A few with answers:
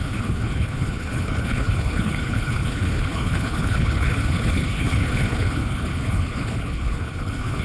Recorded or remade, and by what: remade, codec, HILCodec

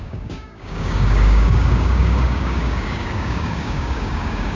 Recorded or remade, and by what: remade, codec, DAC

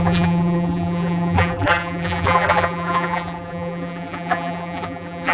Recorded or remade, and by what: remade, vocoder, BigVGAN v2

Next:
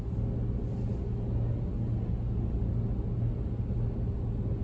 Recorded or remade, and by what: recorded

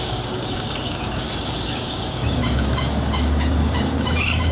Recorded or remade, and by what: remade, codec, DAC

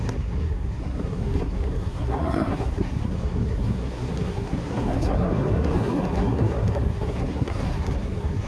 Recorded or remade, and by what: remade, codec, SNAC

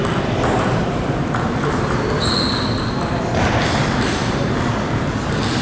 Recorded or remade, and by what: recorded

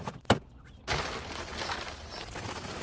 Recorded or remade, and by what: recorded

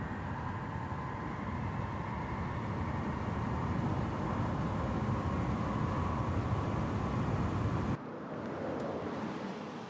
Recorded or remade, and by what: recorded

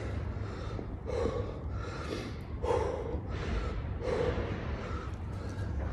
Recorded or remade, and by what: remade, vocoder, BigVGAN v2